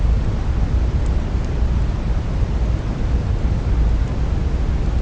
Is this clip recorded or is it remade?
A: recorded